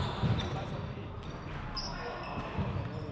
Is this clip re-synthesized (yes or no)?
no